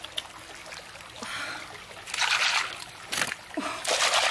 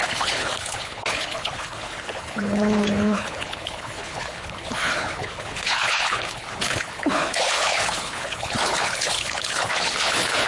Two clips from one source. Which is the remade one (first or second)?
second